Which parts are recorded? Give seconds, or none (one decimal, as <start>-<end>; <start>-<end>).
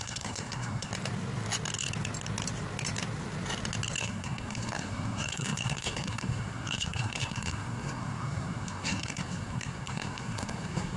0.9-4.0